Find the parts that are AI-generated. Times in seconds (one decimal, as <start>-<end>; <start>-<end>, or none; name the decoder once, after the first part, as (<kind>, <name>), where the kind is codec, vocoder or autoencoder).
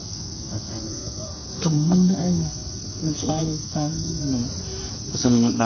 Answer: 0.0-4.2 (codec, SNAC); 4.9-5.7